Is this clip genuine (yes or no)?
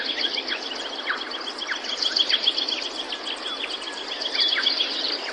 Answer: yes